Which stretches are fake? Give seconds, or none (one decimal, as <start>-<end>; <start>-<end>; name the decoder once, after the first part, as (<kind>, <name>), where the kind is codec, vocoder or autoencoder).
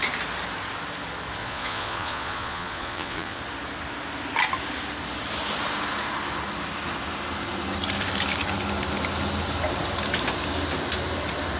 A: 1.4-3.4 (vocoder, Vocos)